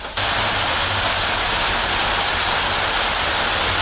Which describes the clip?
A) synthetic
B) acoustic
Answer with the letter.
B